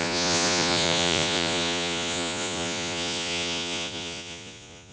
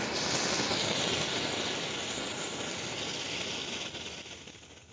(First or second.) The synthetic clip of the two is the first